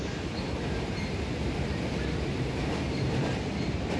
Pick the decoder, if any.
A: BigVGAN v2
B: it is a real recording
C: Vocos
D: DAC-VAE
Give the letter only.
A